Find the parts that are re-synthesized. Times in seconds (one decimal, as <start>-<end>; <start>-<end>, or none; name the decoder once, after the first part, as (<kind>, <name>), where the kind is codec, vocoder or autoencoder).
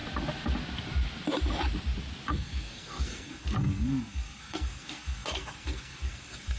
2.3-6.6 (codec, SNAC)